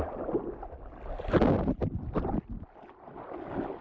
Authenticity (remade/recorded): recorded